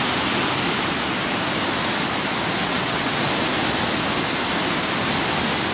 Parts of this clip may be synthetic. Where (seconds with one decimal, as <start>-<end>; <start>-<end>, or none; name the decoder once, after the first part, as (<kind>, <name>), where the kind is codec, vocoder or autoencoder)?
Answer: 2.6-3.2 (vocoder, WaveNeXt)